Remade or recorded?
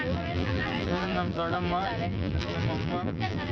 remade